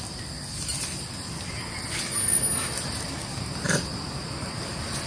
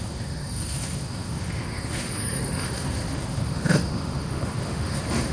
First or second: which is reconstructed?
second